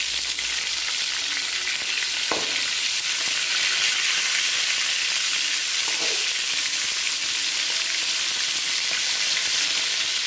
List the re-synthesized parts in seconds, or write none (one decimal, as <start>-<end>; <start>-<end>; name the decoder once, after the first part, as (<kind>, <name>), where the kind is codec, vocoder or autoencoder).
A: none